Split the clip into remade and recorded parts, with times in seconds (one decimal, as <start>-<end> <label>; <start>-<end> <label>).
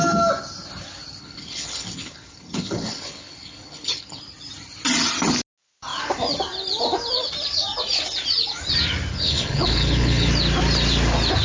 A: 0.0-1.2 recorded; 1.2-4.2 remade; 4.2-9.1 recorded; 9.1-10.3 remade; 10.3-11.4 recorded